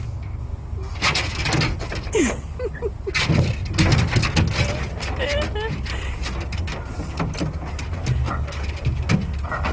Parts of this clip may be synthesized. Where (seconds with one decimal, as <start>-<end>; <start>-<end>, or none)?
none

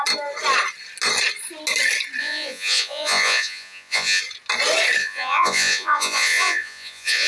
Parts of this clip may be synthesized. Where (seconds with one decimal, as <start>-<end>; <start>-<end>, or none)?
2.2-4.2; 5.0-7.3

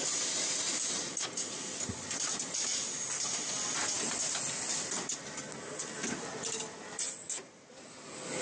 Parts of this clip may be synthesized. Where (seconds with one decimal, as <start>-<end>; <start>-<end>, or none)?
none

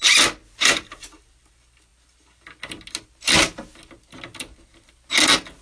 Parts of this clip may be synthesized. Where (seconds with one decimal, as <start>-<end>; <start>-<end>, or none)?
none

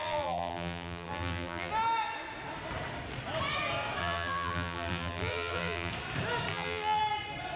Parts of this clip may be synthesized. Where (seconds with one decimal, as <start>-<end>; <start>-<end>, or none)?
0.0-1.7; 4.0-5.9; 6.5-7.0

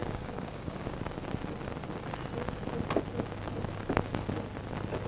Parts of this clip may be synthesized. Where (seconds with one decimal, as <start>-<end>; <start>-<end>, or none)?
0.0-1.0

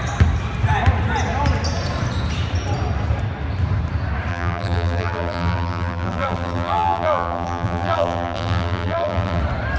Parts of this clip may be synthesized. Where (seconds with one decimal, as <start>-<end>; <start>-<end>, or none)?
4.3-9.4